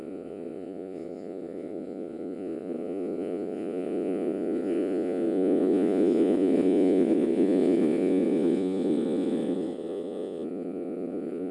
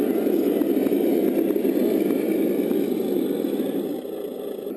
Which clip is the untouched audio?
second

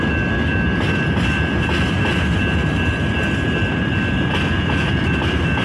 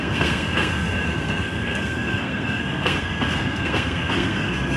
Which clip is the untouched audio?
first